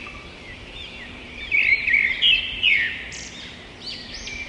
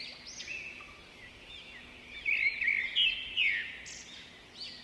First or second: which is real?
second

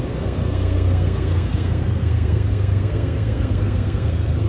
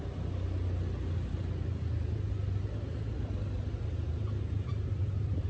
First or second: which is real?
second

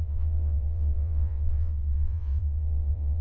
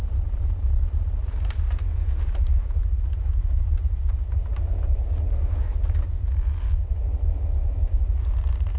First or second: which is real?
second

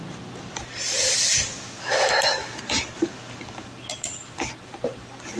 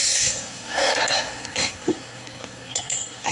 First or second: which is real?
first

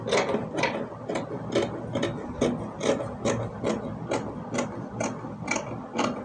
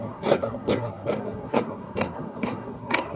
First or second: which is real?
first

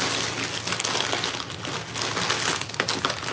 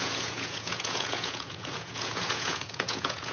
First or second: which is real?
first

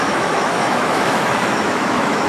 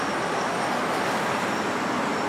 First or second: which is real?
second